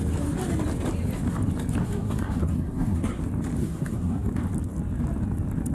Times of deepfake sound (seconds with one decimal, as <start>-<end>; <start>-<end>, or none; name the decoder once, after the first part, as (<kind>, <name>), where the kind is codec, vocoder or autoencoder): 1.8-3.2 (codec, SNAC); 3.6-4.3